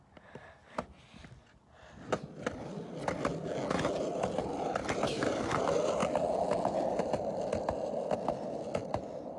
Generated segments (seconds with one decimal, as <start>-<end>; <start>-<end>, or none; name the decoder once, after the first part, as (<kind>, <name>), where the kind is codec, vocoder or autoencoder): 3.3-4.0 (vocoder, BigVGAN v2); 6.0-6.7

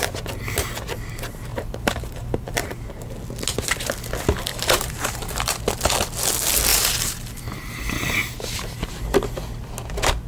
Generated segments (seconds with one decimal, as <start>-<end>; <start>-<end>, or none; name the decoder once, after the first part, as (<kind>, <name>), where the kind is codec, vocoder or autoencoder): 1.5-3.1 (vocoder, BigVGAN v2); 4.5-5.6; 6.7-9.0

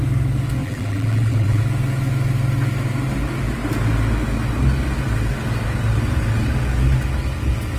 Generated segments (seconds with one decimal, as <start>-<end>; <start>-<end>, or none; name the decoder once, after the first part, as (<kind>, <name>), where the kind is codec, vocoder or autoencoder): 0.6-1.6 (vocoder, BigVGAN v2)

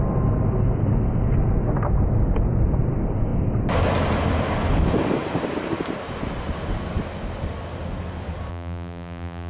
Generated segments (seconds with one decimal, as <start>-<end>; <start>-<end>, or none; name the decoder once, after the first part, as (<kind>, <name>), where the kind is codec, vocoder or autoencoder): 8.5-9.5 (vocoder, BigVGAN v2)

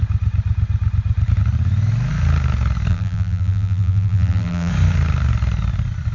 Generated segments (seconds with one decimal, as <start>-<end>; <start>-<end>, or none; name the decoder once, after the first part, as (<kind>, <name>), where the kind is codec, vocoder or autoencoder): 2.9-4.7 (vocoder, BigVGAN v2)

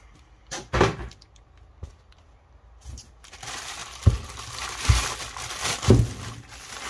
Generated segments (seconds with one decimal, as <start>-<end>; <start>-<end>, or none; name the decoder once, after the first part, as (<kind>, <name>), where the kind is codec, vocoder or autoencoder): none

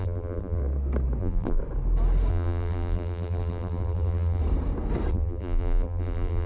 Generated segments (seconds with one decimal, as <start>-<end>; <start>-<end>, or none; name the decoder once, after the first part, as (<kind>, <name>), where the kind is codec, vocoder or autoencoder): 0.0-0.6 (vocoder, BigVGAN v2); 1.2-1.6; 2.3-4.4; 5.1-6.5

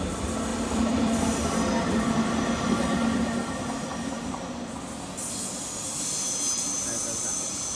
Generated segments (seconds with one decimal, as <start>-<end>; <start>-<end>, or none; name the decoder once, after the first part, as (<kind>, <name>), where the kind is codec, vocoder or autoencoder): 0.5-4.8 (vocoder, BigVGAN v2)